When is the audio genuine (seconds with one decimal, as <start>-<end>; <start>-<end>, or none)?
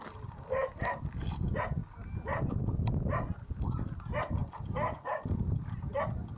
0.0-6.4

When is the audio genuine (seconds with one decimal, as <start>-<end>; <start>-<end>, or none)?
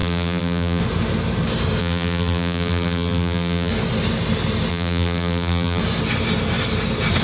0.8-1.8; 3.7-4.7; 5.8-7.2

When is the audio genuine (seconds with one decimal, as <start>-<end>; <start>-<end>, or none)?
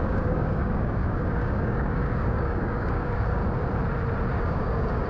3.4-4.4